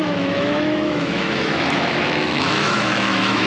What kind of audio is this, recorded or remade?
remade